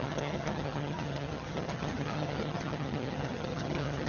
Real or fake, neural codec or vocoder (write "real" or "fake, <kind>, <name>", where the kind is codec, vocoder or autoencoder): fake, vocoder, HiFi-GAN